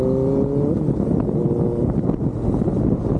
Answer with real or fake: real